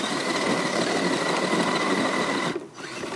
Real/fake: real